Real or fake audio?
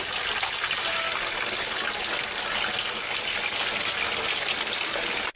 real